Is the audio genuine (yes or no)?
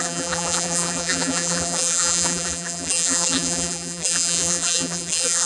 no